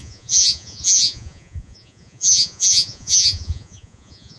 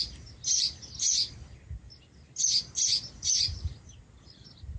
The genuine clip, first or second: second